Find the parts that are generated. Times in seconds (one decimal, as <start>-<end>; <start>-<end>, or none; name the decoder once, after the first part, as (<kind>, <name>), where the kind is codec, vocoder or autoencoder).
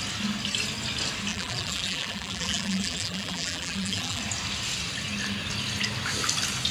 1.3-4.2 (vocoder, BigVGAN v2)